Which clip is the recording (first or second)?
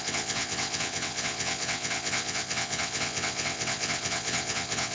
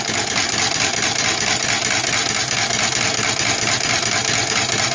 second